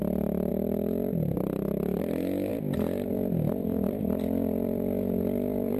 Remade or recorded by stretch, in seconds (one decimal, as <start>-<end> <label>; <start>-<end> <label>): 0.0-0.5 remade; 0.5-2.0 recorded; 2.0-2.5 remade; 2.5-3.1 recorded; 3.1-5.8 remade